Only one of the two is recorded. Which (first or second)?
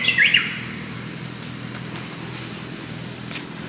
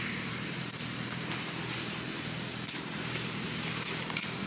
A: first